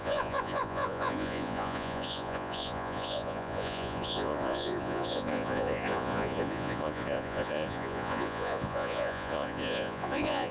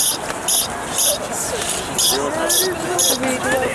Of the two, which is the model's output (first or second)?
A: first